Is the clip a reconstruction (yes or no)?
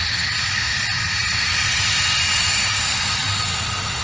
no